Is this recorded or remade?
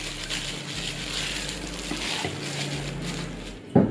recorded